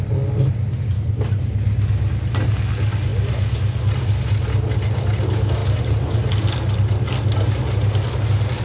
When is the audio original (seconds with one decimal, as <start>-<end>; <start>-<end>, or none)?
0.0-5.6; 6.3-8.6